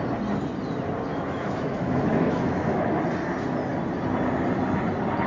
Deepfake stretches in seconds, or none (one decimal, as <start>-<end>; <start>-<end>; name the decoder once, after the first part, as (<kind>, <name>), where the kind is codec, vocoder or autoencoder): 1.1-3.0 (autoencoder, DAC-VAE)